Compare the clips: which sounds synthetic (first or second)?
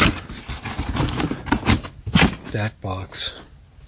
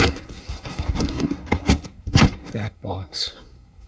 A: second